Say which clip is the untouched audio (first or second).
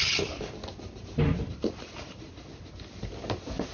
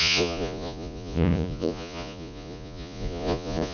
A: first